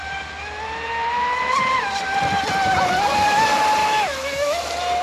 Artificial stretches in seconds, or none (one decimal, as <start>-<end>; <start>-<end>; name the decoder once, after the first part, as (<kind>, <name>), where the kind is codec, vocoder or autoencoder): 3.8-4.6 (autoencoder, DAC-VAE)